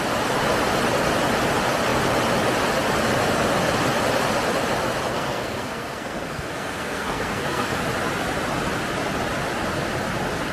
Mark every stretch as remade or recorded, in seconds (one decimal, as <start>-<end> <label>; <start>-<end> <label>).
0.0-5.1 recorded; 5.1-7.8 remade; 7.8-10.5 recorded